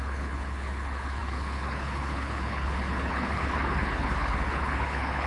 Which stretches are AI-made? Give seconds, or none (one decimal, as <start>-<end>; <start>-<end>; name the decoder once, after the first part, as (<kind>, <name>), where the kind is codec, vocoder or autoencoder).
0.0-5.3 (codec, HILCodec)